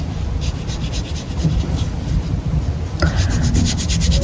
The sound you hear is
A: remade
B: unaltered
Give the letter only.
B